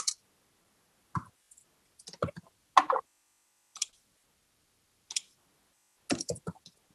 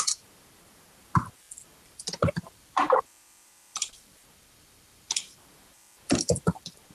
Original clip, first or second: first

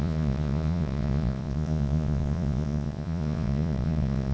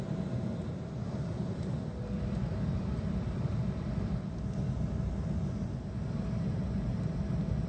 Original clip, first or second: second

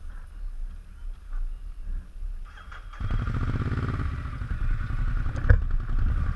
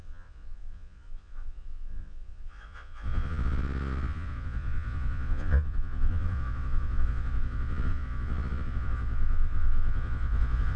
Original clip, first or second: first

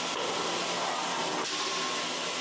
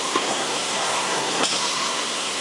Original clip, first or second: first